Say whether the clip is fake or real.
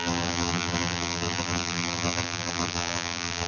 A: fake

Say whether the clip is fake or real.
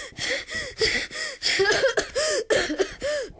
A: real